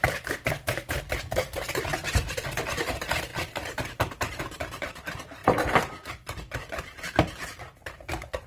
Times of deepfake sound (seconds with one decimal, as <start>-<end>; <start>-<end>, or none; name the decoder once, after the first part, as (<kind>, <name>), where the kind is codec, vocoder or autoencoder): 0.0-8.5 (vocoder, BigVGAN v2)